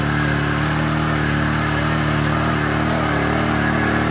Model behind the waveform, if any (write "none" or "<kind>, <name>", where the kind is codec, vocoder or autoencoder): none